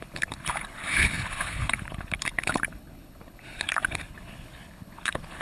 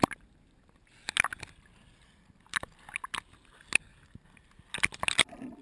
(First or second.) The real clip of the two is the second